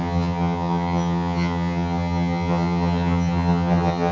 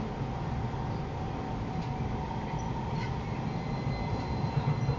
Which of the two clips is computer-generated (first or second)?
first